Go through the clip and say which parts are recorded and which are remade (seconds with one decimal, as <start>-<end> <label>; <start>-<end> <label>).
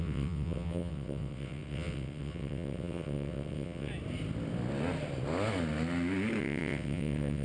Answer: 0.0-3.9 remade; 3.9-6.4 recorded; 6.4-7.4 remade